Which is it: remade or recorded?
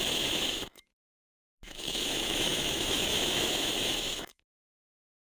remade